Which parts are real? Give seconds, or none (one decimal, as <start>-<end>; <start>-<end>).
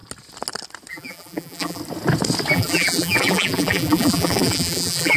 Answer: 0.0-0.9; 1.8-2.5